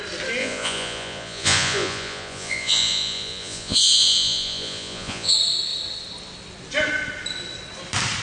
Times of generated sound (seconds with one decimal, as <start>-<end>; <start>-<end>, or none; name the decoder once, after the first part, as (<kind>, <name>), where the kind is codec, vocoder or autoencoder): 0.4-5.3 (vocoder, Vocos)